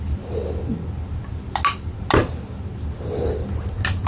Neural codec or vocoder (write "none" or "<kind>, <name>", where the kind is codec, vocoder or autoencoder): none